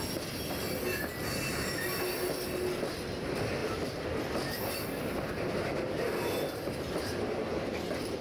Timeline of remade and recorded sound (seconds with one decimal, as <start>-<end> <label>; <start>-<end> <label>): 0.0-3.6 recorded; 3.6-4.6 remade; 4.6-5.7 recorded; 5.7-6.7 remade; 6.7-8.2 recorded